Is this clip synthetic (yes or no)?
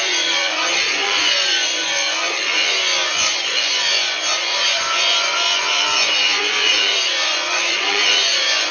yes